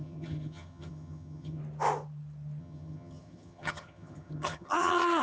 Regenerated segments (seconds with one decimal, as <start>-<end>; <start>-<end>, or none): 0.0-1.6; 2.6-5.2